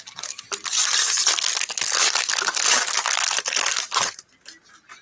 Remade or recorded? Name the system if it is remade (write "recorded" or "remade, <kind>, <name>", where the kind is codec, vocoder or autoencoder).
recorded